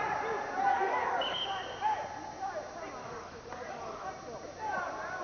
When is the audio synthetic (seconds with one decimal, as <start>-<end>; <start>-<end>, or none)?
0.7-1.4; 3.0-4.1